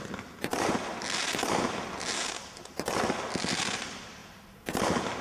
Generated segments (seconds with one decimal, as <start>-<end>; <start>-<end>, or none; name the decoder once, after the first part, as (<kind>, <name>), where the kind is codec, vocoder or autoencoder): 4.2-4.8 (vocoder, BigVGAN v2)